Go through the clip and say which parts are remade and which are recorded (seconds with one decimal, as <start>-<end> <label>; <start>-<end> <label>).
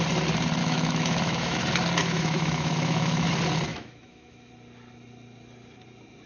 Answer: 0.0-0.6 recorded; 0.6-1.6 remade; 1.6-2.0 recorded; 2.0-3.3 remade; 3.3-3.7 recorded; 3.7-4.5 remade; 4.5-6.3 recorded